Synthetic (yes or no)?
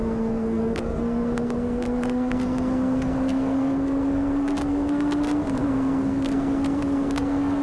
yes